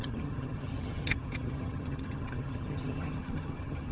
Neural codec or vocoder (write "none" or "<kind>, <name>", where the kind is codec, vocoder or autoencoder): vocoder, HiFi-GAN